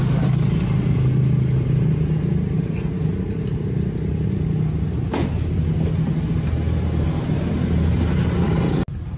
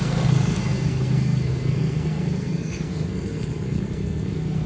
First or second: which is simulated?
second